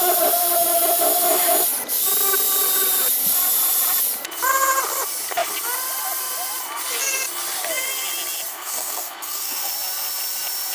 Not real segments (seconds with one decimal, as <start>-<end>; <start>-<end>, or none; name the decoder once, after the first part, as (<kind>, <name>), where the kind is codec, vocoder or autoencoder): 8.5-9.7 (codec, SNAC)